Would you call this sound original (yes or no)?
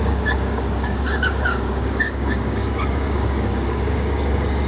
no